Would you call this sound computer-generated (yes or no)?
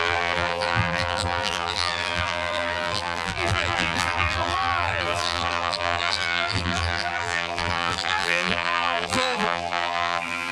yes